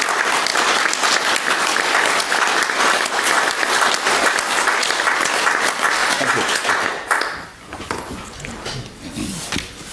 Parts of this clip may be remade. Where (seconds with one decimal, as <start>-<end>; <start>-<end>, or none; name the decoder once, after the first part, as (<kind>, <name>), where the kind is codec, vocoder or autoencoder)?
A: 6.0-6.7 (vocoder, Vocos); 7.5-8.5